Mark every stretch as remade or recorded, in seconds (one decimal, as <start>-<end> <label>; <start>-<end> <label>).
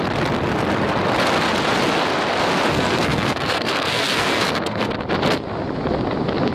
0.0-2.7 recorded; 2.7-4.9 remade; 4.9-6.5 recorded